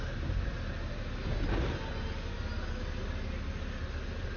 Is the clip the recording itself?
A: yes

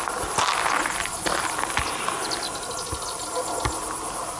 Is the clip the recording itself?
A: yes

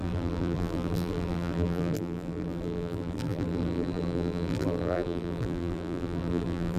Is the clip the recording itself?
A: no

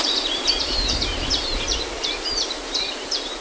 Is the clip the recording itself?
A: no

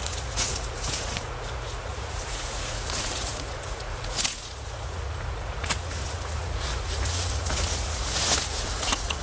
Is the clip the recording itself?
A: no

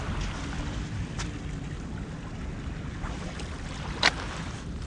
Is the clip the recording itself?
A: yes